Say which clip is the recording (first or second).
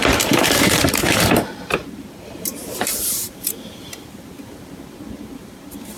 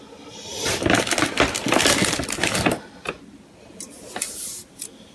second